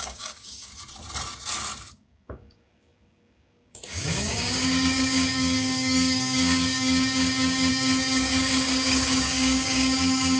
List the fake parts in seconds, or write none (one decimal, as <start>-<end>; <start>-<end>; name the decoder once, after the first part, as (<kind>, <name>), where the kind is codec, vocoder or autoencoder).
0.0-0.7 (codec, DAC); 1.9-10.4